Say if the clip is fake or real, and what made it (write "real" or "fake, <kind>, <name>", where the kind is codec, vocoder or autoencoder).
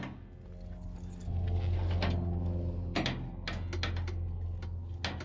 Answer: real